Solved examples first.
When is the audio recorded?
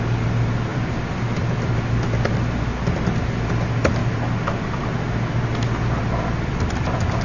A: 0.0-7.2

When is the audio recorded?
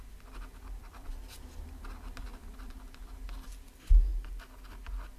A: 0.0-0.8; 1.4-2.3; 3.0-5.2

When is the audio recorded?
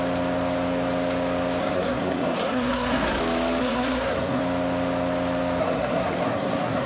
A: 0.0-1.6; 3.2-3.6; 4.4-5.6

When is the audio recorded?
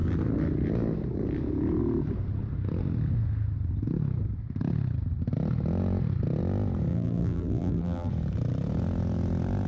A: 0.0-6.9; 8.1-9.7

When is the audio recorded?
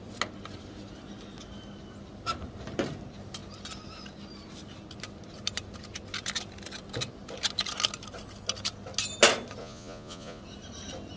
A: 0.0-9.6; 10.4-11.2